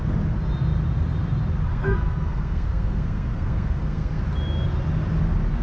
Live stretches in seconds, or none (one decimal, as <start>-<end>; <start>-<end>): 0.0-1.7; 4.2-5.6